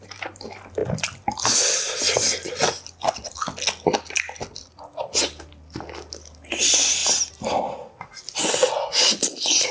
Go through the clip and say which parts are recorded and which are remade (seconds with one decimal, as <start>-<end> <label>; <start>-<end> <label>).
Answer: 0.0-9.7 recorded